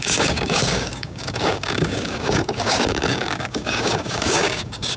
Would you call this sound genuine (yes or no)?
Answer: no